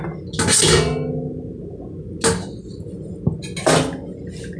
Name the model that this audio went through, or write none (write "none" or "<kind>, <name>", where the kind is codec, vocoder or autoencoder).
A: none